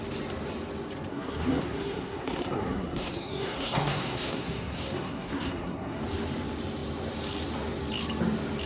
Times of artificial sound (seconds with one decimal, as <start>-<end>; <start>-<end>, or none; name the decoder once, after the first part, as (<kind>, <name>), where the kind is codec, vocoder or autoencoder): 1.1-6.0 (codec, SNAC)